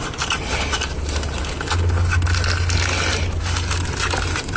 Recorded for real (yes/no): yes